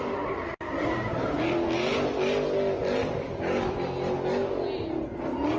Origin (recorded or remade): recorded